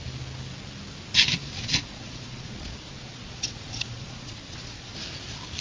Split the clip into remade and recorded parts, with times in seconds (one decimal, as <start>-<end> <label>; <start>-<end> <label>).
0.0-1.6 recorded; 1.6-5.0 remade; 5.0-5.6 recorded